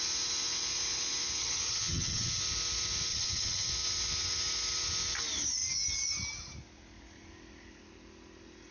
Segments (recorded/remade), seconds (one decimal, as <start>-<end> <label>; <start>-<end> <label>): 0.0-1.4 recorded; 1.4-2.4 remade; 2.4-3.1 recorded; 3.1-3.7 remade; 3.7-8.7 recorded